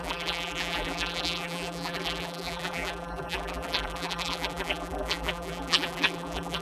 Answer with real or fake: fake